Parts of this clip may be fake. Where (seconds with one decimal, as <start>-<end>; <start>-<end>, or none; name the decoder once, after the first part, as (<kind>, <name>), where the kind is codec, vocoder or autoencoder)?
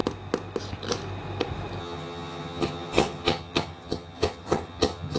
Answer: 1.8-5.2 (vocoder, HiFi-GAN)